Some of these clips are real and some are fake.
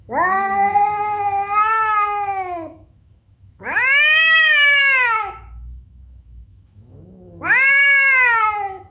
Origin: fake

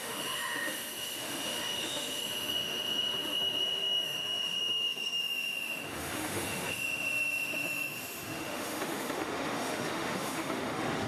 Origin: fake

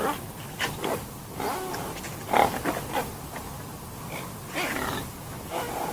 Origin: real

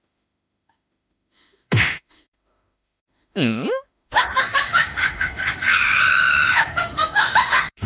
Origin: fake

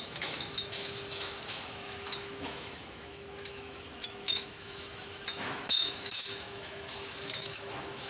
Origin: fake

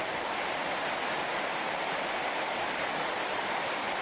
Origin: real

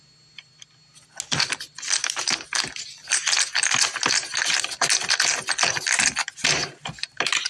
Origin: real